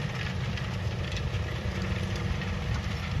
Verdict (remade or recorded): remade